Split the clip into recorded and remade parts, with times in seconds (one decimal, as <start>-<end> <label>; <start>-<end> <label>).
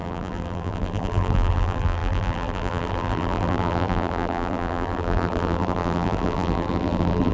0.0-7.3 remade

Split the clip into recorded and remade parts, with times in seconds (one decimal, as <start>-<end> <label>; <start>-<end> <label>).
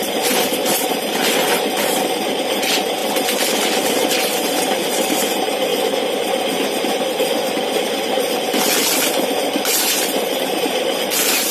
0.0-1.2 remade; 1.2-2.3 recorded; 2.3-3.0 remade; 3.0-4.1 recorded; 4.1-5.7 remade; 5.7-9.8 recorded; 9.8-11.5 remade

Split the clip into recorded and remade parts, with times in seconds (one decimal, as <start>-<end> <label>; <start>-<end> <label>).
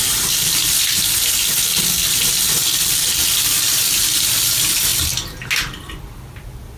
0.0-6.8 recorded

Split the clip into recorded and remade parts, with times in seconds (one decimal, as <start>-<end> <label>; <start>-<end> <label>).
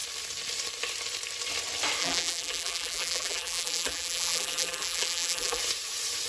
0.0-2.0 recorded; 2.0-5.6 remade; 5.6-6.3 recorded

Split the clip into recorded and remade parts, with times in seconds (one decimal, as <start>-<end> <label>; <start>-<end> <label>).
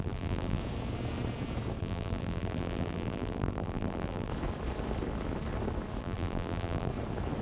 0.0-0.6 remade; 0.6-1.8 recorded; 1.8-4.3 remade; 4.3-6.0 recorded; 6.0-6.9 remade; 6.9-7.4 recorded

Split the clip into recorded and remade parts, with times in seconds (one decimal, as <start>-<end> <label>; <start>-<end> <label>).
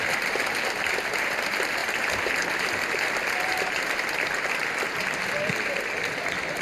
0.0-6.6 recorded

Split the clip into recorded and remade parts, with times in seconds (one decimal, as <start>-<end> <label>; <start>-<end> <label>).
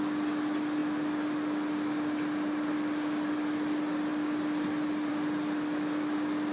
0.0-6.5 recorded